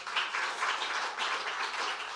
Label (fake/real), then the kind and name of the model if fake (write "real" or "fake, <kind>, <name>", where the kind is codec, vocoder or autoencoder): real